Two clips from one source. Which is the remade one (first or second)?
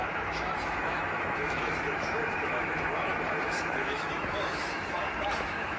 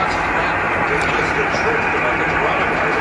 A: first